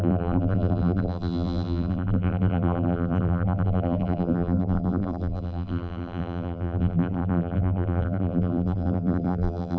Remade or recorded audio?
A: remade